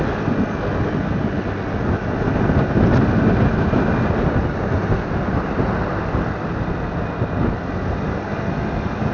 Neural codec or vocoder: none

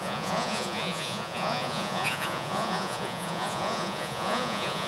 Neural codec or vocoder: vocoder, Vocos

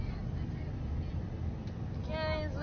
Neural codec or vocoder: none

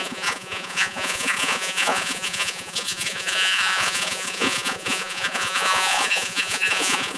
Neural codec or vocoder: vocoder, Vocos